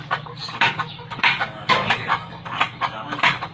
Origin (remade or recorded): remade